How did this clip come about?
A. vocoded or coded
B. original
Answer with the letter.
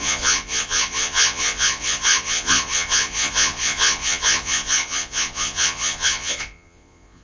A